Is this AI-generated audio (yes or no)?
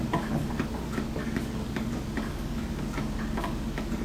yes